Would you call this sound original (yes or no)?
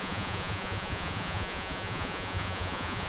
no